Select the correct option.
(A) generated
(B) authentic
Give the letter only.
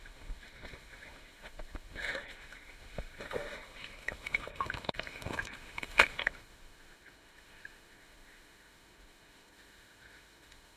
A